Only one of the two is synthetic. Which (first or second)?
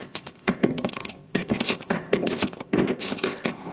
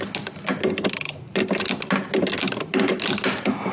first